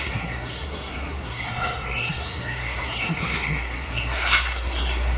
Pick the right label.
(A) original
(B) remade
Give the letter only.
B